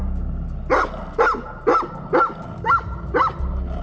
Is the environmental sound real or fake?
real